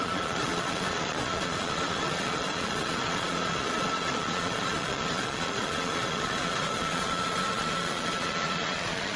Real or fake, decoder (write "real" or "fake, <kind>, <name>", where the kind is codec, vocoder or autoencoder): fake, vocoder, Vocos